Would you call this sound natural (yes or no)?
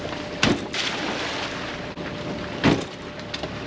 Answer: yes